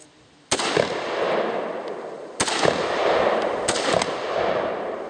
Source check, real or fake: real